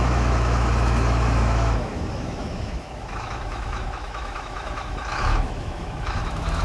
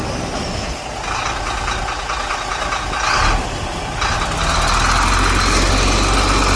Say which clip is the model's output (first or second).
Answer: first